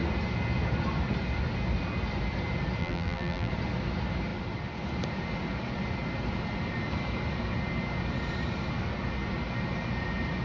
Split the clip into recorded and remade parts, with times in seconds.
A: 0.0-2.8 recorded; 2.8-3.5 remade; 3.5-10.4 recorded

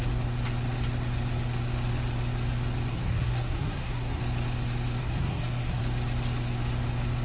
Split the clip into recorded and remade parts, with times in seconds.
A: 0.0-2.9 recorded; 2.9-4.2 remade; 4.2-5.0 recorded; 5.0-5.8 remade; 5.8-7.2 recorded